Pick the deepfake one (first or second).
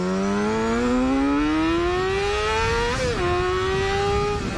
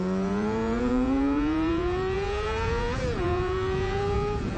second